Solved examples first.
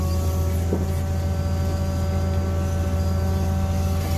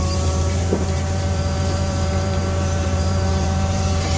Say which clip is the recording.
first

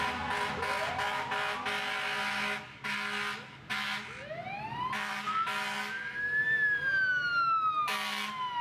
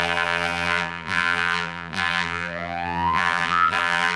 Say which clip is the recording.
first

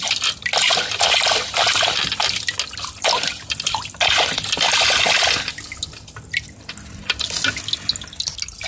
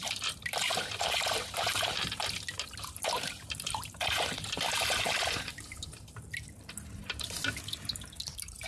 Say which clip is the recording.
first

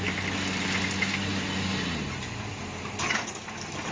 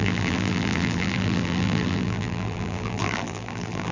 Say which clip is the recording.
first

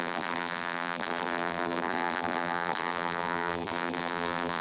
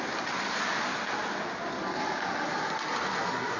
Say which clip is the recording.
second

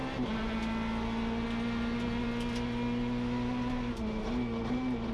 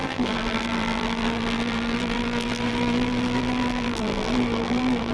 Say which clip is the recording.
first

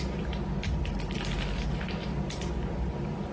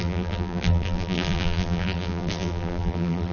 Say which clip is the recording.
first